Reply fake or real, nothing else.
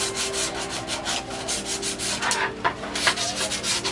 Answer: real